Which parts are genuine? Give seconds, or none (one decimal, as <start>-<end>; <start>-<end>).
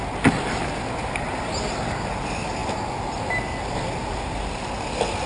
0.0-5.3